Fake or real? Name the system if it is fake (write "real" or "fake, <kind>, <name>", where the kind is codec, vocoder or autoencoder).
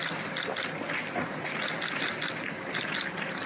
real